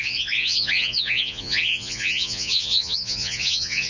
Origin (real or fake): fake